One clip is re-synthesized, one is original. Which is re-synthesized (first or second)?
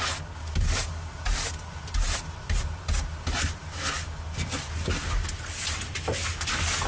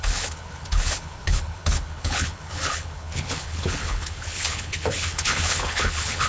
second